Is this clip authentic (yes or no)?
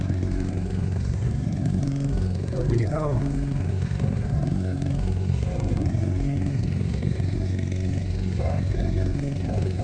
no